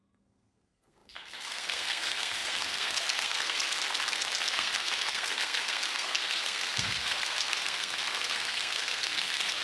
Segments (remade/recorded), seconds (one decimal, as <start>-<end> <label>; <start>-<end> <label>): 0.0-9.6 remade